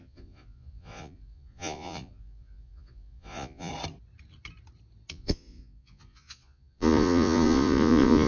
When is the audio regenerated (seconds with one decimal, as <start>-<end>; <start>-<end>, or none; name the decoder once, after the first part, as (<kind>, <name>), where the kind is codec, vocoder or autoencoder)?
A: 0.0-3.7 (vocoder, Vocos); 5.1-8.3